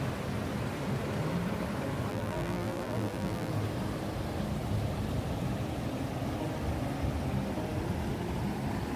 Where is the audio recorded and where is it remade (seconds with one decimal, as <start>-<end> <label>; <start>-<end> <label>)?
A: 0.0-2.1 recorded; 2.1-3.5 remade; 3.5-9.0 recorded